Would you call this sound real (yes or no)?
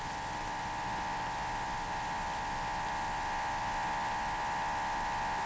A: yes